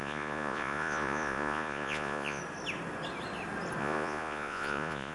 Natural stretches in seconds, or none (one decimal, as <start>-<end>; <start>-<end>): 2.4-3.8